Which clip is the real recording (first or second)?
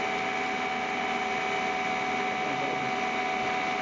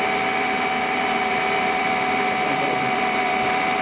first